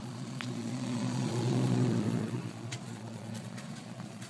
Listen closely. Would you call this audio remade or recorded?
remade